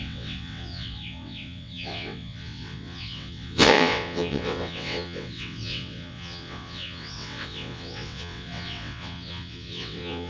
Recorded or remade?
remade